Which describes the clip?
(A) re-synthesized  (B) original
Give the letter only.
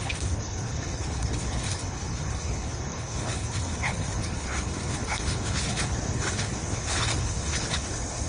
A